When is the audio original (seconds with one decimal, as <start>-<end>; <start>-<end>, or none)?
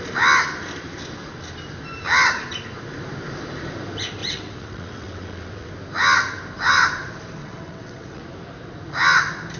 0.0-4.2; 5.7-7.4; 8.2-9.6